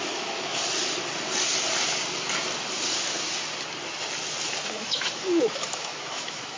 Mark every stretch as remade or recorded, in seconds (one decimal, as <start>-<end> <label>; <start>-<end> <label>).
0.0-0.6 remade; 0.6-4.6 recorded; 4.6-6.6 remade